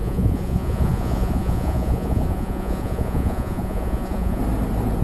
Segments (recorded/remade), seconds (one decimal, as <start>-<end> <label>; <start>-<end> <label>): 0.0-4.4 remade; 4.4-5.0 recorded